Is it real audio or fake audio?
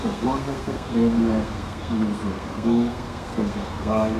fake